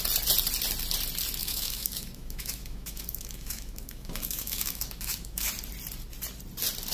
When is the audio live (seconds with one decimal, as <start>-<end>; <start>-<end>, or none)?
0.0-1.4; 5.5-6.9